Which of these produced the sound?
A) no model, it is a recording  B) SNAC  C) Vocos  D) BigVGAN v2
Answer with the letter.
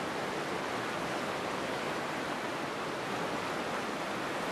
A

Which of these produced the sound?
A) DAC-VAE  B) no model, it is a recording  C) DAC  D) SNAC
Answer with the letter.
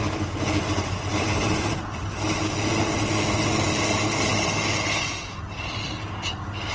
B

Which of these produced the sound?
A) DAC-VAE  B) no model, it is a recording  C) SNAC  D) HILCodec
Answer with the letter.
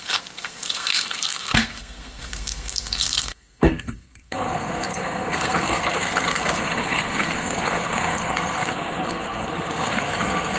C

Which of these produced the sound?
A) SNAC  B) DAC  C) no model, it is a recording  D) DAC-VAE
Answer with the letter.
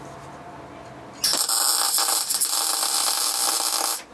C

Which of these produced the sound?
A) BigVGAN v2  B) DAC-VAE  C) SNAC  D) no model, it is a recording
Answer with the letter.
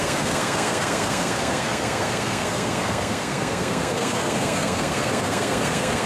C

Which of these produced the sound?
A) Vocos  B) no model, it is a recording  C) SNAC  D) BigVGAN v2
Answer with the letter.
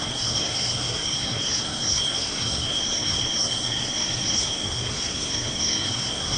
C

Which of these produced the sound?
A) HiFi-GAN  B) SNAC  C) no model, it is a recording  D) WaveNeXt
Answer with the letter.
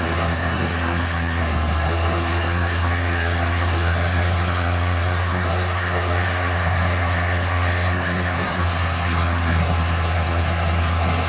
B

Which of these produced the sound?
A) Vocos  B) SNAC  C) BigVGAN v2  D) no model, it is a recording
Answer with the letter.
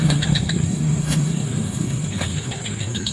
B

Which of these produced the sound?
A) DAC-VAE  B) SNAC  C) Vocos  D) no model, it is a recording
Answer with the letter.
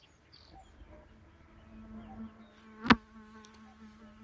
D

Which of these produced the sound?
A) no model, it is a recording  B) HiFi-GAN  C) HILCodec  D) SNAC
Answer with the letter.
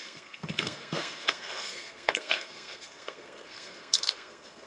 D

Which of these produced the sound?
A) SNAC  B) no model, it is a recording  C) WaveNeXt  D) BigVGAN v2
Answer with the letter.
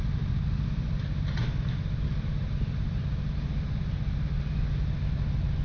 B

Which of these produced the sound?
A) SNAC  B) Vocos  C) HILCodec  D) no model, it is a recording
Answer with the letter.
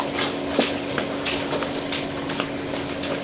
D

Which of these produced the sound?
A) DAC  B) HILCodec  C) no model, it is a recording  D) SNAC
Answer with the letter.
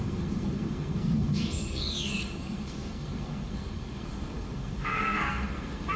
D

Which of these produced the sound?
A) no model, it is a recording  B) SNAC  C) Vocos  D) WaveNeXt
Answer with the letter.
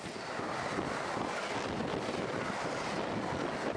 A